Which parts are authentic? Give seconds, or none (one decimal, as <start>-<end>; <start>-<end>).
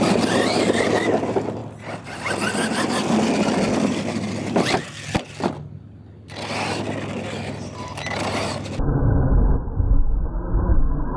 0.0-11.2